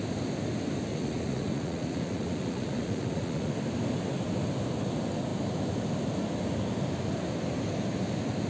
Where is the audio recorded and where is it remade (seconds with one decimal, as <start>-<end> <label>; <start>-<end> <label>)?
0.0-0.9 recorded; 0.9-3.5 remade; 3.5-8.5 recorded